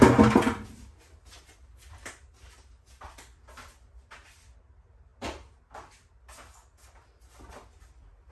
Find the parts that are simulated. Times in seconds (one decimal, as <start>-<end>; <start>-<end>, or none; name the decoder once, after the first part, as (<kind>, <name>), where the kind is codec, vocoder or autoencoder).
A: none